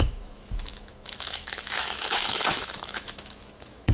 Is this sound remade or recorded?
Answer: remade